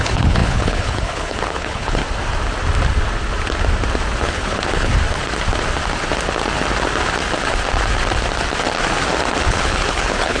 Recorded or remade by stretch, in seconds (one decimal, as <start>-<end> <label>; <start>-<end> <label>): 0.0-2.0 remade; 2.0-4.2 recorded; 4.2-4.9 remade; 4.9-9.5 recorded; 9.5-10.4 remade